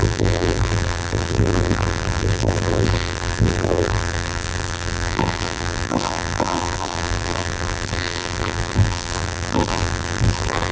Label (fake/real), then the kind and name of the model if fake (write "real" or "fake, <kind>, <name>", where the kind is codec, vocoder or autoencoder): fake, vocoder, BigVGAN v2